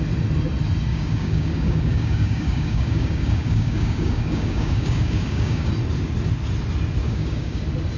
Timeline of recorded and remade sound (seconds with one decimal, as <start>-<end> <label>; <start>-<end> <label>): 0.0-0.9 recorded; 0.9-5.7 remade; 5.7-7.0 recorded; 7.0-7.6 remade; 7.6-8.0 recorded